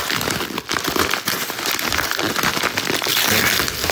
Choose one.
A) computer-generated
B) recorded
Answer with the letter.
B